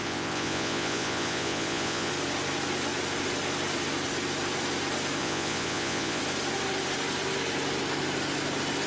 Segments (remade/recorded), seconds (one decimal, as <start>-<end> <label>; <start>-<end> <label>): 0.0-2.1 remade; 2.1-5.2 recorded; 5.2-6.2 remade; 6.2-8.9 recorded